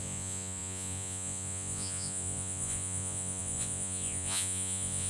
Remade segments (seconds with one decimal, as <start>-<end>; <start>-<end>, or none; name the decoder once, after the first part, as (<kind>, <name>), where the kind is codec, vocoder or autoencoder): 0.0-5.1 (vocoder, Vocos)